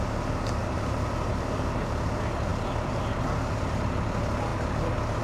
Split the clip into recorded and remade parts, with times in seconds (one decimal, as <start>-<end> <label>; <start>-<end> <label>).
0.0-0.6 recorded; 0.6-1.4 remade; 1.4-2.5 recorded; 2.5-3.2 remade; 3.2-5.2 recorded